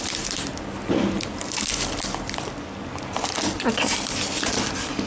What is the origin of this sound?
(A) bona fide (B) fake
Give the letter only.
A